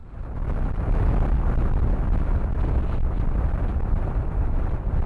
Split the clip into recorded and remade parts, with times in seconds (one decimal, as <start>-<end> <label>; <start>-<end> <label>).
0.0-5.1 recorded